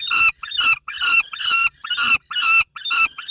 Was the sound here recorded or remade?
remade